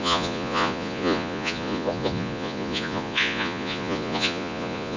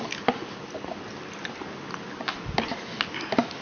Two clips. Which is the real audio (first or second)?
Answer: second